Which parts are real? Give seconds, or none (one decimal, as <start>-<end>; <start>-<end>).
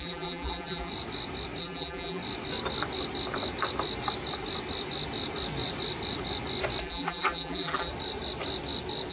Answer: 0.9-1.6; 2.2-6.8; 7.9-9.1